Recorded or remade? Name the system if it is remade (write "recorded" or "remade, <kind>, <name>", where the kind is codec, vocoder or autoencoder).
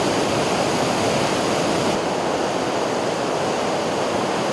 recorded